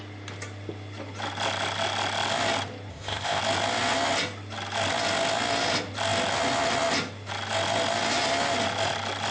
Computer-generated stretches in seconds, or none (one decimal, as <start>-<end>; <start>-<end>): 2.9-3.4